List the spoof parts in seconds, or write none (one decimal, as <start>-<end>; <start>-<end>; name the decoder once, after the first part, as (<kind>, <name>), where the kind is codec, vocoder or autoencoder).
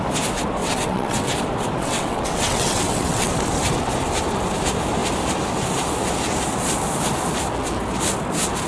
0.6-1.3 (vocoder, WaveNeXt); 1.8-3.3